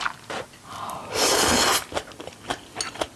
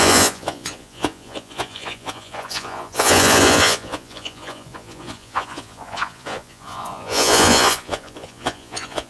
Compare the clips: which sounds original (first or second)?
first